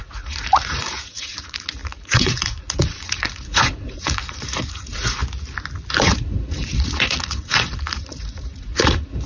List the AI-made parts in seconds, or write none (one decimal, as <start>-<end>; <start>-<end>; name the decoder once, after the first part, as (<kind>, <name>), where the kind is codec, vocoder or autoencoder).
0.0-5.2 (vocoder, Vocos); 5.9-9.3